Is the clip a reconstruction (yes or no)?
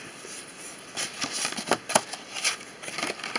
no